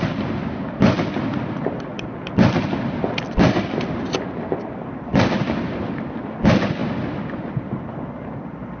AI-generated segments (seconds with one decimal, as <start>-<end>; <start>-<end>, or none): none